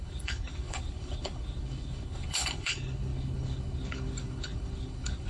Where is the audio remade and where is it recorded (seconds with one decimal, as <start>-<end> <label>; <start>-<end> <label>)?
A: 0.0-5.3 remade